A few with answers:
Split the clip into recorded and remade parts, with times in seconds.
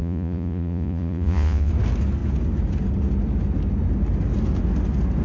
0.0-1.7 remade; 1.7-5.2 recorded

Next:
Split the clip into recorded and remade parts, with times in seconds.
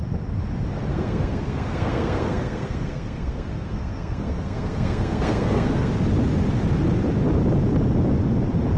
0.0-0.9 recorded; 0.9-5.9 remade; 5.9-8.8 recorded